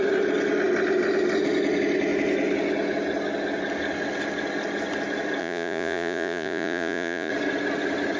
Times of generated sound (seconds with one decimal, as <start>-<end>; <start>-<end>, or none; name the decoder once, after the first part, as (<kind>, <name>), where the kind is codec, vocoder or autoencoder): 5.4-7.3 (vocoder, Vocos)